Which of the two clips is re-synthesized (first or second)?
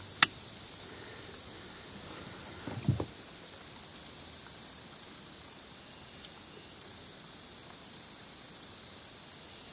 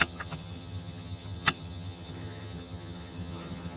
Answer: second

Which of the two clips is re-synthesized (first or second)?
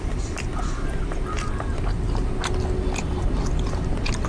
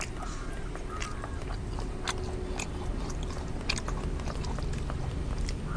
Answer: first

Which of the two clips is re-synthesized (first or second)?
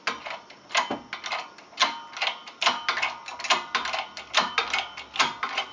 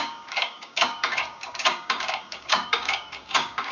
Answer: second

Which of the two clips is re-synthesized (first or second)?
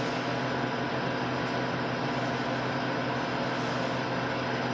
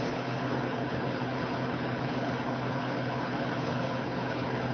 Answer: second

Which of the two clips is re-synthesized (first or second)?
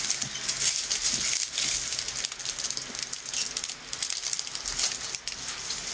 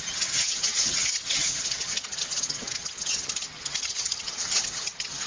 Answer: second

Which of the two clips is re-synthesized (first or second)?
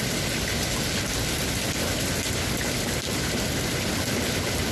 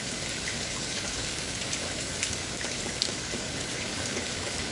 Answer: second